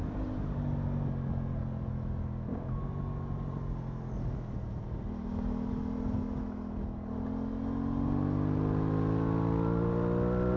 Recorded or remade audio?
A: recorded